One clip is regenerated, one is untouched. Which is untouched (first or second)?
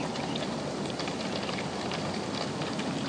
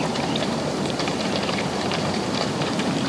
first